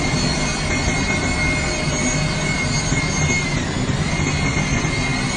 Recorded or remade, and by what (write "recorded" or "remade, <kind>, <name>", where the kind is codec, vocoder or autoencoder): recorded